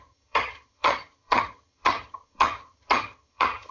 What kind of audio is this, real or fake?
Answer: fake